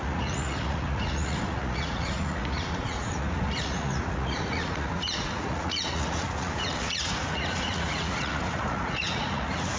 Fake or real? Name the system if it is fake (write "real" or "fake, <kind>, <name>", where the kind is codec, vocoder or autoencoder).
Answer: fake, vocoder, Vocos